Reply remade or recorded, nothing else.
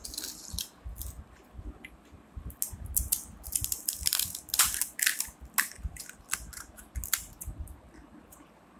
recorded